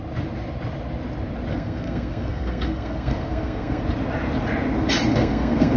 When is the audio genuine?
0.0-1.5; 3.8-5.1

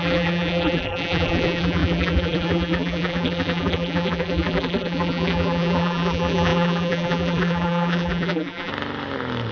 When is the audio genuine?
8.7-9.5

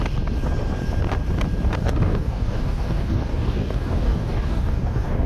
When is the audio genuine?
0.0-1.8

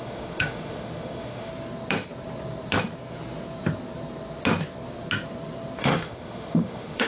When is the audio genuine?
1.5-5.8

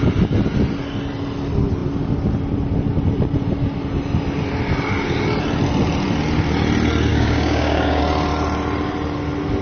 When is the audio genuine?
0.0-7.1; 8.0-9.6

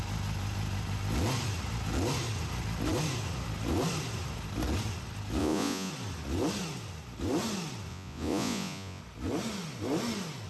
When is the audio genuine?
0.0-5.4; 5.9-7.9; 9.0-10.5

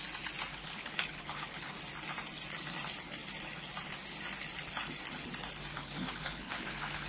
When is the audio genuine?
0.0-0.5; 1.7-5.7

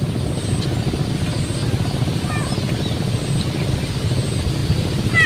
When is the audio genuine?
0.0-5.3